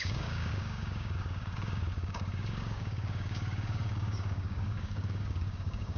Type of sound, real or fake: fake